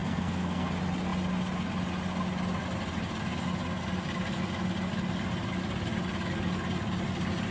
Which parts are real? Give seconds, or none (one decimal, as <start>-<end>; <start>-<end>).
0.7-7.5